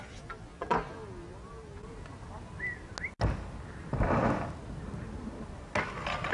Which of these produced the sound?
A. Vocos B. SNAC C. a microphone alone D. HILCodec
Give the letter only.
C